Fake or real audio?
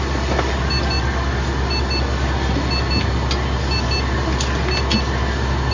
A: real